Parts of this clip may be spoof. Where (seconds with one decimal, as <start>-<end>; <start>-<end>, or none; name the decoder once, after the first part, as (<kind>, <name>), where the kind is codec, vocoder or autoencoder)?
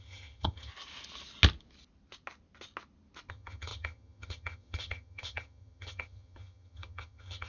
0.0-0.7 (vocoder, HiFi-GAN); 3.3-7.5